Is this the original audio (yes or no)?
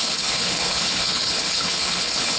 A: no